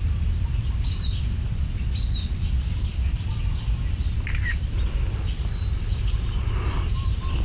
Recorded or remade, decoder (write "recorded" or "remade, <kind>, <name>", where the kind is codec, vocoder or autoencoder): recorded